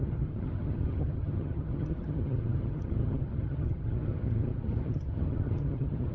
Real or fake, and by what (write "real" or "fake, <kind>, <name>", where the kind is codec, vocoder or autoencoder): fake, vocoder, HiFi-GAN